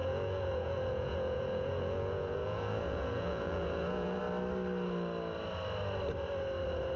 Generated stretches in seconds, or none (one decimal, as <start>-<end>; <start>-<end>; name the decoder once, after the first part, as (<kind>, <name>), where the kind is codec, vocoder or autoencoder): 0.0-4.2 (vocoder, Vocos)